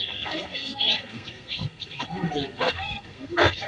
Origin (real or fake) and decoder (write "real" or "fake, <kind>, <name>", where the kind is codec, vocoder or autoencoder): fake, codec, SNAC